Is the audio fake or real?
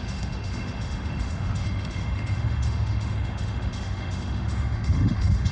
fake